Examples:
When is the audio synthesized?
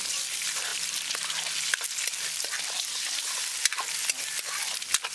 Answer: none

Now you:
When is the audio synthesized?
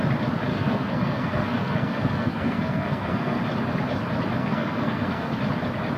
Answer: 0.5-3.4; 4.4-5.4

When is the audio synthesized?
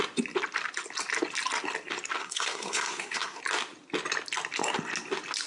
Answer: 2.2-3.4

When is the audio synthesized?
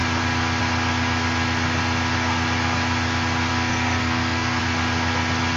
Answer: 3.5-4.6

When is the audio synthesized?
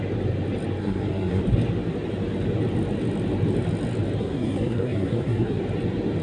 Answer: 0.8-1.4; 4.2-5.6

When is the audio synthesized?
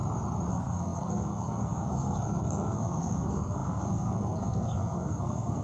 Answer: 0.5-5.6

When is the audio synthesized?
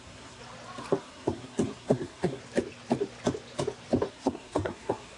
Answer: 0.0-0.4; 1.0-2.4; 4.1-5.2